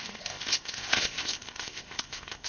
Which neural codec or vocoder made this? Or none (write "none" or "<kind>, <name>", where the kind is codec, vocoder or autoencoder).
codec, ZipCodec